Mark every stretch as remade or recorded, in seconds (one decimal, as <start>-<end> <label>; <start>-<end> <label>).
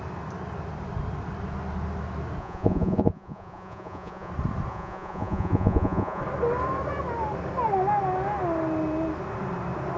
0.0-2.4 recorded; 2.4-4.3 remade; 4.3-4.7 recorded; 4.7-6.2 remade; 6.2-10.0 recorded